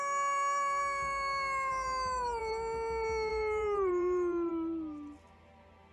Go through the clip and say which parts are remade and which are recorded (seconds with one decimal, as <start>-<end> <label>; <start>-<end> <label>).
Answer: 0.0-1.7 recorded; 1.7-2.4 remade; 2.4-3.3 recorded; 3.3-4.5 remade; 4.5-5.9 recorded